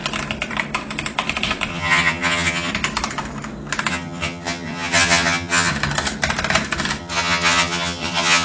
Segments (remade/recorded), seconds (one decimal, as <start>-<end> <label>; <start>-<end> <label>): 0.0-1.7 recorded; 1.7-2.7 remade; 2.7-3.9 recorded; 3.9-5.7 remade; 5.7-7.0 recorded; 7.0-8.4 remade